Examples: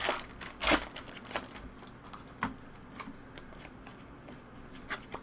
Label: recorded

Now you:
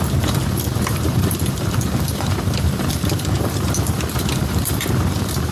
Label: remade